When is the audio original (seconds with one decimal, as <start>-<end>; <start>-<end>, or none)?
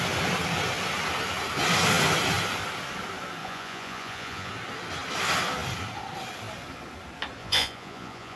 0.0-3.4; 4.5-7.4